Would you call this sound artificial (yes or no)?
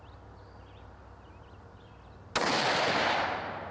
no